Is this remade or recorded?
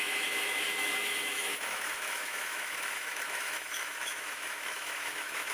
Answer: remade